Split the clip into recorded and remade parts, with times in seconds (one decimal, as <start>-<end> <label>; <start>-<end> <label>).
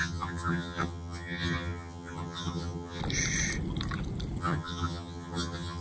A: 0.0-3.0 remade; 3.0-4.4 recorded; 4.4-5.8 remade